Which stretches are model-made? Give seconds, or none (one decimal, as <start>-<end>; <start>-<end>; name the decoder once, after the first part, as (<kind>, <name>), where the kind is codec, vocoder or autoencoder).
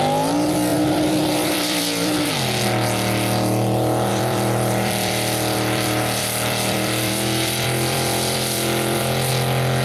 0.7-2.3 (vocoder, BigVGAN v2); 4.1-9.3